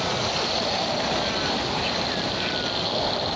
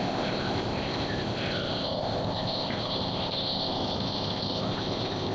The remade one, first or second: second